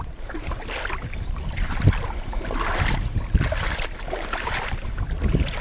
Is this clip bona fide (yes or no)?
yes